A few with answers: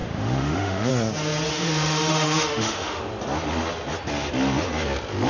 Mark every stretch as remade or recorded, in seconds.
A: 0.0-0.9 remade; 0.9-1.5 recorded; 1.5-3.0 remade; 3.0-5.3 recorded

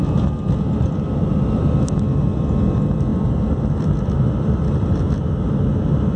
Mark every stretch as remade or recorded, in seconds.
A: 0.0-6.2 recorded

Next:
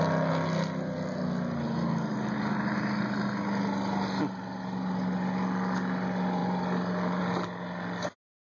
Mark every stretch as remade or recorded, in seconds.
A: 0.0-8.5 recorded

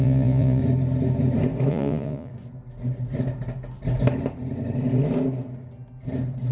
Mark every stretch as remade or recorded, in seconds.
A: 0.0-0.6 remade; 0.6-1.7 recorded; 1.7-2.3 remade; 2.3-6.5 recorded